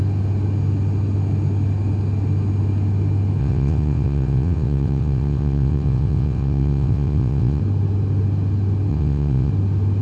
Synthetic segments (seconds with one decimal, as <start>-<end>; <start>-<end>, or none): 3.4-7.6; 8.9-9.5

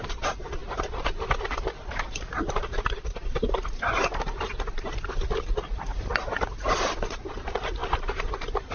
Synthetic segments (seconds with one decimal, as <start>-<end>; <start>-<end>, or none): none

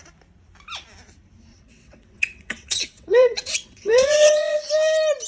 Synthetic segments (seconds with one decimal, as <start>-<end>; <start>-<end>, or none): 1.5-4.7

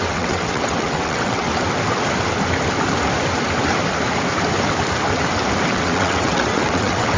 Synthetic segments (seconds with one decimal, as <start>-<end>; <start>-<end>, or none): 0.0-1.5; 5.7-7.2

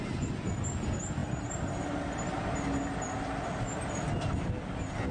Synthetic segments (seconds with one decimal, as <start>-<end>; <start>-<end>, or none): none

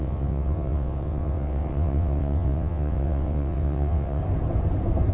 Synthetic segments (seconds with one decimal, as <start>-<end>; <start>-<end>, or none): 0.0-4.2